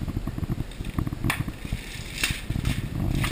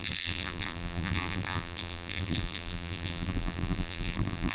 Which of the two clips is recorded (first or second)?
first